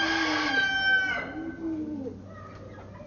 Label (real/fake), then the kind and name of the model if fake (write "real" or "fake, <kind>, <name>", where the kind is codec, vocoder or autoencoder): real